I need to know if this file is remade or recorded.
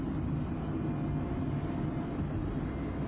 recorded